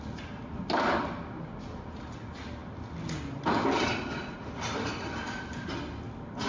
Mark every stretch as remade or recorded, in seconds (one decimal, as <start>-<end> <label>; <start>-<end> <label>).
0.0-6.5 recorded

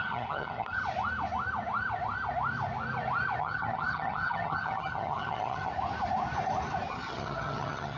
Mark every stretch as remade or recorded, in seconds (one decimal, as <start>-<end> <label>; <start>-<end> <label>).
0.0-0.8 remade; 0.8-3.4 recorded; 3.4-5.7 remade; 5.7-6.9 recorded; 6.9-8.0 remade

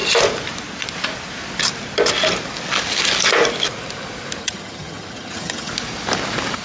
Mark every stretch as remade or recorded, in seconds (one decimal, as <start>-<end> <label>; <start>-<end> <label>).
0.0-4.4 recorded; 4.4-5.7 remade; 5.7-6.6 recorded

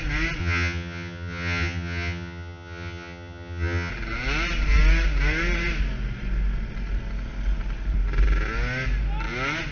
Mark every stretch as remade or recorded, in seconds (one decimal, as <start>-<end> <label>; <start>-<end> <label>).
0.0-0.4 recorded; 0.4-3.9 remade; 3.9-9.7 recorded

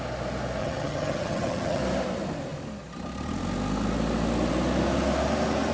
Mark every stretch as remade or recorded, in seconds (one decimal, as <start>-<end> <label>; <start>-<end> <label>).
0.0-0.6 recorded; 0.6-1.8 remade; 1.8-5.7 recorded

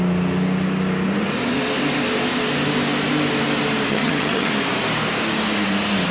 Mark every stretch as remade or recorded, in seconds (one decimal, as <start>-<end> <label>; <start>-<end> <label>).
0.0-3.9 recorded; 3.9-4.5 remade; 4.5-6.1 recorded

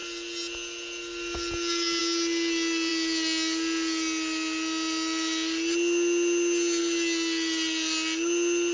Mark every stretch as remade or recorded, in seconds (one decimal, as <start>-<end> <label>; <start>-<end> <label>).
0.0-8.7 recorded